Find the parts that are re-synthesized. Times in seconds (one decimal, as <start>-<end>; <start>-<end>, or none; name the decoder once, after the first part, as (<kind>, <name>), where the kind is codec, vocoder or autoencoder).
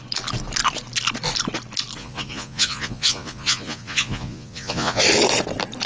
2.0-5.0 (vocoder, Vocos)